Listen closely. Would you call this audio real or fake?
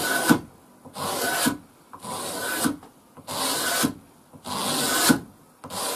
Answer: real